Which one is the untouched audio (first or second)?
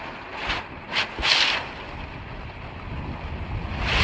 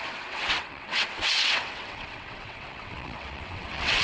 first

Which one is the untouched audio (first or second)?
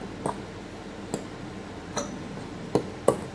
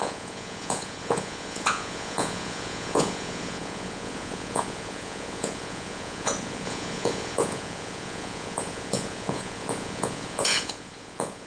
first